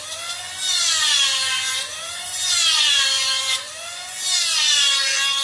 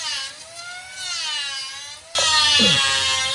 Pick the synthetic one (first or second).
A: first